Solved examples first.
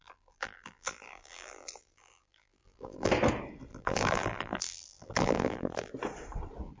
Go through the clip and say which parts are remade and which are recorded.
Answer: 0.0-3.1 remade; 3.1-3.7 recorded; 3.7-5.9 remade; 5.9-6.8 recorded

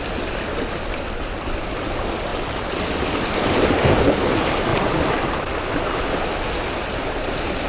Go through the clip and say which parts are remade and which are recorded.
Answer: 0.0-4.7 recorded; 4.7-5.4 remade; 5.4-7.7 recorded

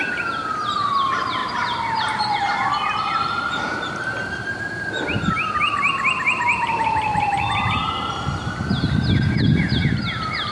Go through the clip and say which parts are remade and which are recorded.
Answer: 0.0-1.4 recorded; 1.4-5.0 remade; 5.0-7.1 recorded; 7.1-7.7 remade; 7.7-10.5 recorded

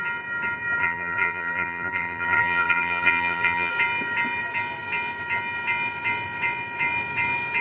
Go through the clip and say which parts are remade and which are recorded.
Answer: 0.0-0.8 recorded; 0.8-3.7 remade; 3.7-7.6 recorded

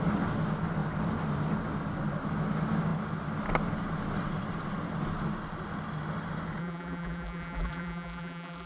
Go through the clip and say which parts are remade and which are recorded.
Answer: 0.0-6.6 recorded; 6.6-8.7 remade

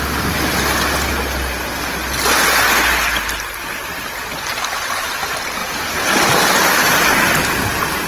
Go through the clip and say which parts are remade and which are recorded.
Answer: 0.0-5.6 recorded; 5.6-8.1 remade